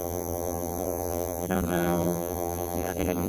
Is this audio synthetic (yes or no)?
yes